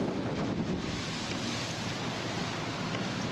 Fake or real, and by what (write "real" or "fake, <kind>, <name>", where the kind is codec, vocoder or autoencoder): real